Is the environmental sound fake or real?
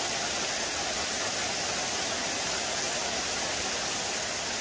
real